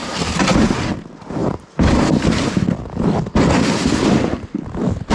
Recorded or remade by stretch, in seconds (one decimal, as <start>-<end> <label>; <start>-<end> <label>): 0.0-0.8 remade; 0.8-1.4 recorded; 1.4-2.2 remade; 2.2-5.1 recorded